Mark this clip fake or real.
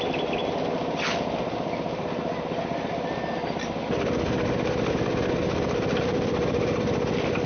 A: real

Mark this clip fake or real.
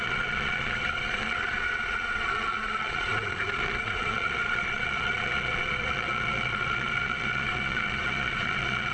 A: fake